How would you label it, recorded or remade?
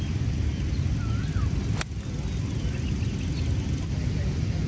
recorded